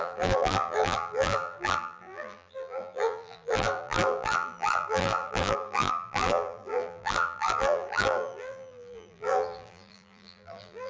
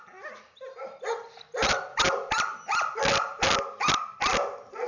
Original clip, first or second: second